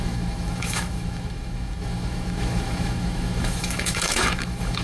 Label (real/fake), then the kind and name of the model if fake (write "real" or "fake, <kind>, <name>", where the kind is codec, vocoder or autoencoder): fake, autoencoder, DAC-VAE